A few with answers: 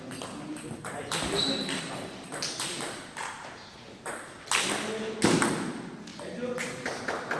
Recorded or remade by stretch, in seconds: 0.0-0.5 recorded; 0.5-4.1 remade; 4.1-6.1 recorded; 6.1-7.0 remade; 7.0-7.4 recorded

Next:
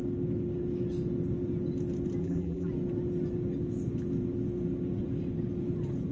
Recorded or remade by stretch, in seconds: 0.0-2.2 recorded; 2.2-2.7 remade; 2.7-6.1 recorded

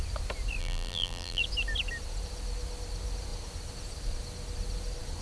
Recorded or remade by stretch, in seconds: 0.0-0.6 recorded; 0.6-1.4 remade; 1.4-5.2 recorded

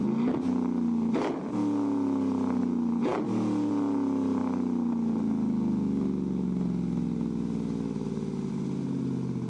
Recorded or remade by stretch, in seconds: 0.0-9.5 recorded